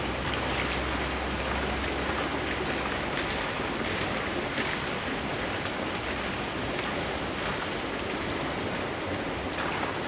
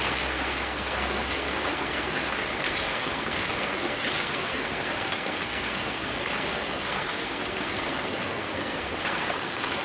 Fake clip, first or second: second